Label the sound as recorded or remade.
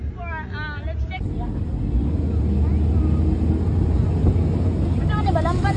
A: recorded